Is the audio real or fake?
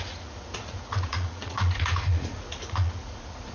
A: fake